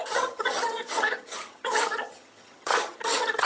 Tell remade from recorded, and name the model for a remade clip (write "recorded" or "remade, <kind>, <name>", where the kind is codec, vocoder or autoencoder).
remade, vocoder, HiFi-GAN